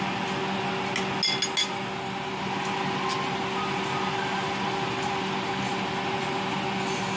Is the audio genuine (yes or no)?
yes